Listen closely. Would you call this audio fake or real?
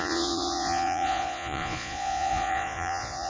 fake